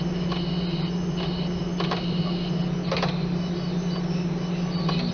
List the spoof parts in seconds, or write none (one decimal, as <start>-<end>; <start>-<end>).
none